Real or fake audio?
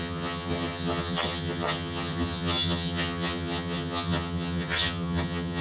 fake